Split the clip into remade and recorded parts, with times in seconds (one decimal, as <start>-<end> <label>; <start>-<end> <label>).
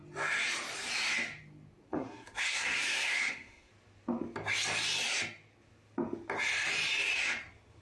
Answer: 0.0-1.9 recorded; 1.9-3.7 remade; 3.7-7.8 recorded